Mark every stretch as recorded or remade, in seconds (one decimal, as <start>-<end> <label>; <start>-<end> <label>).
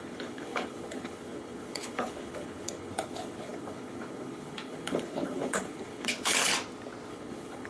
0.0-6.5 remade; 6.5-7.1 recorded; 7.1-7.7 remade